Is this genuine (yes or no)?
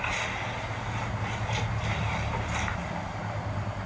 yes